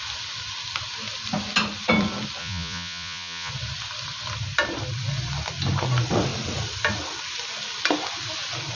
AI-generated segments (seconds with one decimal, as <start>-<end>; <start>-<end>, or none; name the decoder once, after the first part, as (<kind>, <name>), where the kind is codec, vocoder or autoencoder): 2.4-3.5 (vocoder, Vocos)